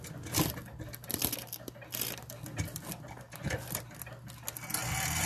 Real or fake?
real